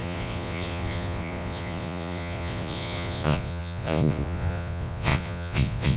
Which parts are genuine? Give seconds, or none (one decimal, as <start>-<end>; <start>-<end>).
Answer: none